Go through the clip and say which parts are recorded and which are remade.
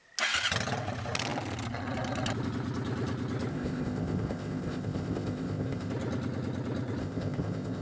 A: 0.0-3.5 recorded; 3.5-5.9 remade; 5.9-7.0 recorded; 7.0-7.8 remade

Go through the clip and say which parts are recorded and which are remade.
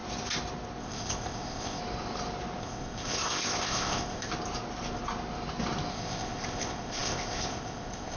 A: 0.0-0.8 recorded; 0.8-1.8 remade; 1.8-2.6 recorded; 2.6-4.3 remade; 4.3-5.9 recorded; 5.9-8.2 remade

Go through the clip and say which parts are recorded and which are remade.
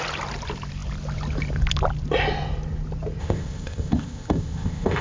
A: 0.0-3.2 recorded; 3.2-5.0 remade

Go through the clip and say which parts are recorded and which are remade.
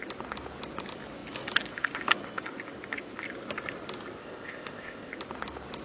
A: 0.0-4.2 recorded; 4.2-5.1 remade; 5.1-5.8 recorded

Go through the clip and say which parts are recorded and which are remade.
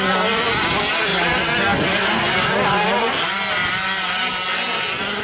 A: 0.0-5.2 recorded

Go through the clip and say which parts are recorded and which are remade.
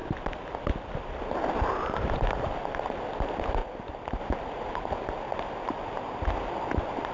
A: 0.0-7.1 recorded